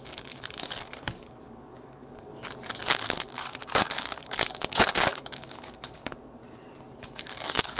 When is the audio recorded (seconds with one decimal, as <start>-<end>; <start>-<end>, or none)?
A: 2.3-2.9; 6.4-7.0